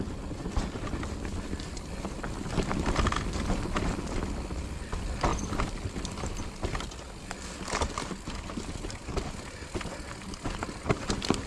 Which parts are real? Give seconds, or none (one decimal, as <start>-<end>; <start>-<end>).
0.0-11.5